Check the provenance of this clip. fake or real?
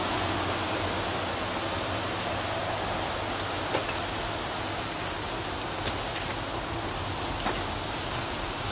real